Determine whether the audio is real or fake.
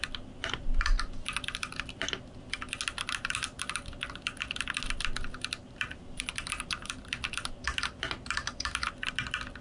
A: real